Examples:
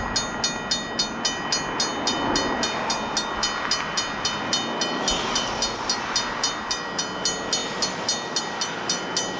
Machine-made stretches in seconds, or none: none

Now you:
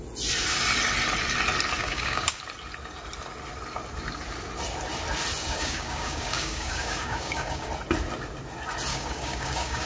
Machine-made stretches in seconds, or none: 1.8-2.4 (codec, DAC); 5.4-7.7; 8.9-9.9

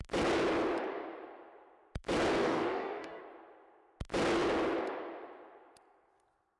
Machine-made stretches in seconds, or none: 2.4-3.2 (codec, DAC)

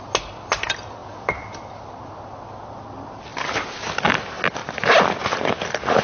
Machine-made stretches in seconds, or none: none

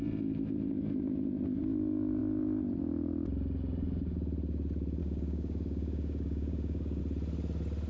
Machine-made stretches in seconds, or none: 5.0-7.0 (codec, DAC)